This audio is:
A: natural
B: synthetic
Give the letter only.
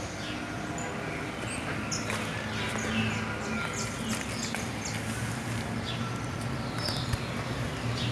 A